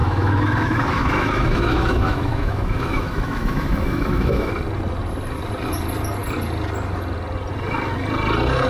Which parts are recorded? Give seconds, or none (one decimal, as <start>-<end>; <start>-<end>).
4.5-8.7